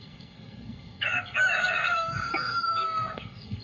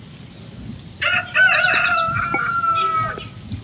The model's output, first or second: first